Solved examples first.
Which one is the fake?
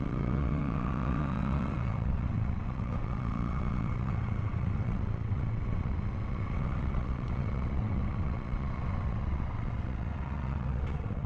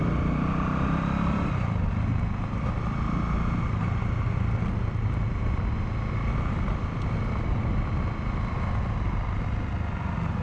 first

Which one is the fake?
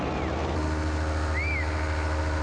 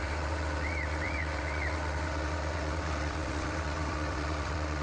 second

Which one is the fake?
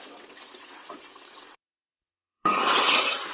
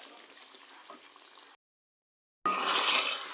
first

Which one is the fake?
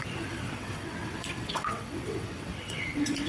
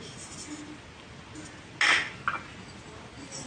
first